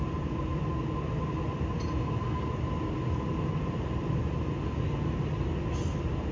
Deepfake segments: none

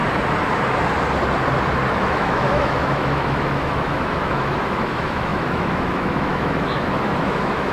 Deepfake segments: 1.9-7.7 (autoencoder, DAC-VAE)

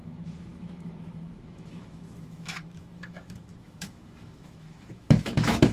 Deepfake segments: 0.0-5.7 (autoencoder, DAC-VAE)

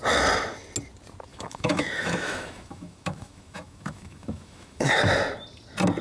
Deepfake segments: 1.3-4.9 (autoencoder, DAC-VAE)

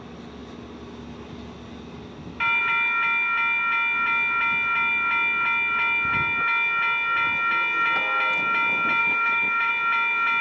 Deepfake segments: 9.0-9.7 (autoencoder, DAC-VAE)

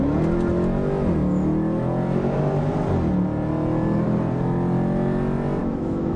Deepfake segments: 5.6-6.2 (autoencoder, DAC-VAE)